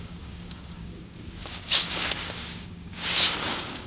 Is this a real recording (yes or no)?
no